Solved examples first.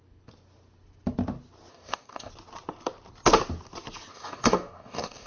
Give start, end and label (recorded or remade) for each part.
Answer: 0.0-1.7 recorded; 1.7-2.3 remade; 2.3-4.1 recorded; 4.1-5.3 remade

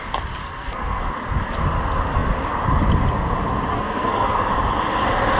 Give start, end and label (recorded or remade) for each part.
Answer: 0.0-0.4 recorded; 0.4-1.1 remade; 1.1-3.7 recorded; 3.7-4.5 remade; 4.5-5.4 recorded

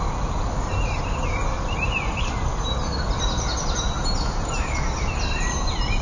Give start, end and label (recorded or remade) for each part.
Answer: 0.0-6.0 recorded

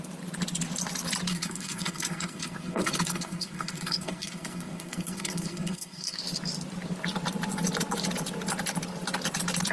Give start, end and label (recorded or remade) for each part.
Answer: 0.0-1.3 recorded; 1.3-6.2 remade; 6.2-9.7 recorded